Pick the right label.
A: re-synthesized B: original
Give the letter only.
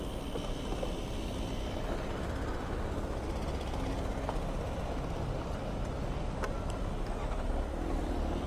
B